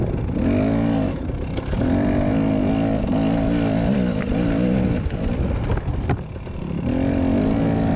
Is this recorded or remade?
recorded